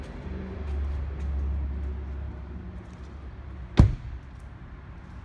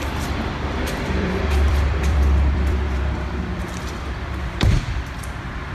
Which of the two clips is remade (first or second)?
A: second